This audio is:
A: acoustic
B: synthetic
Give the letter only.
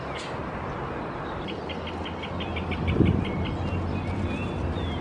A